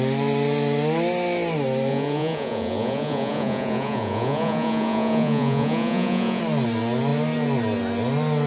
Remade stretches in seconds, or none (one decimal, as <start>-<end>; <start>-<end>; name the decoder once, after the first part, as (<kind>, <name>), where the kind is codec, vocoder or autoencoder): 1.9-6.4 (vocoder, Vocos)